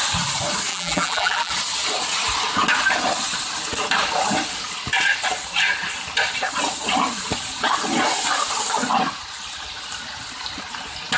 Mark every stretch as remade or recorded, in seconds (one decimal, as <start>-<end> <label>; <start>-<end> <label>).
0.0-0.7 recorded; 0.7-1.5 remade; 1.5-11.2 recorded